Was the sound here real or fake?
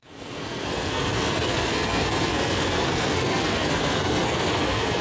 fake